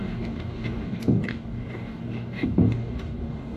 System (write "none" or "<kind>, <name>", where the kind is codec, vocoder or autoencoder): codec, DAC